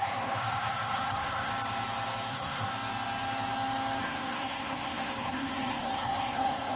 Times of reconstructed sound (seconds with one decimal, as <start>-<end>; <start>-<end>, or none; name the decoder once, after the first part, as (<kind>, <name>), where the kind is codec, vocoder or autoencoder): 0.0-1.5 (codec, SNAC); 2.3-2.7; 4.0-6.8